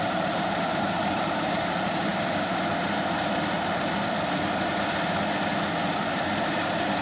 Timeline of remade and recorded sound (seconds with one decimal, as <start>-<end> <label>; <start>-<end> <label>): 0.0-2.1 remade; 2.1-6.0 recorded; 6.0-7.0 remade